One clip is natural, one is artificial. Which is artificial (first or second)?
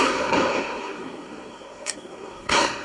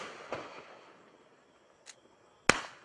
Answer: first